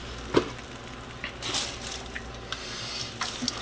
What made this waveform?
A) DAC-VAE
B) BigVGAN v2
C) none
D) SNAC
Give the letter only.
C